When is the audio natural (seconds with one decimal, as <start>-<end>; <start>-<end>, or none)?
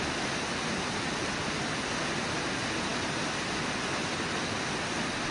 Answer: 0.0-5.3